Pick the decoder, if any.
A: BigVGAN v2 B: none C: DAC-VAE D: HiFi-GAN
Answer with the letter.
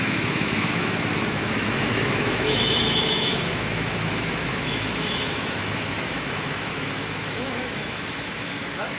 C